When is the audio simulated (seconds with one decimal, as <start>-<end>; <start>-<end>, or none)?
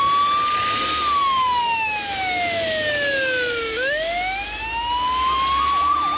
1.2-4.9